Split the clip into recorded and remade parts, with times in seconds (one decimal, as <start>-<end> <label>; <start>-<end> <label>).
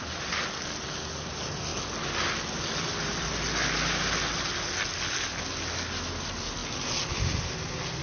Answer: 0.0-8.0 recorded